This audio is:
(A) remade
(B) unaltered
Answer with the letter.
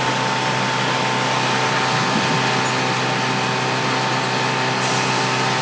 B